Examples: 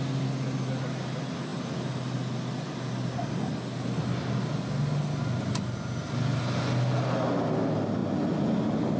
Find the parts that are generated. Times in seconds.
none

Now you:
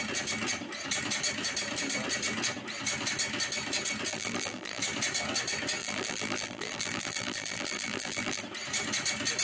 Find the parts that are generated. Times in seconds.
4.1-4.8 (vocoder, BigVGAN v2); 5.8-8.4

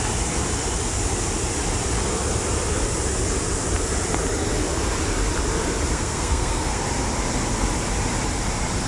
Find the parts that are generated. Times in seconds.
5.9-6.8 (codec, SNAC)

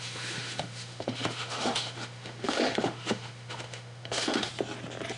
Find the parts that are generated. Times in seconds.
0.0-4.5 (autoencoder, DAC-VAE)

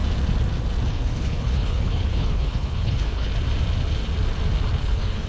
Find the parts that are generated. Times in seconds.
0.9-3.3 (codec, HILCodec); 4.8-5.3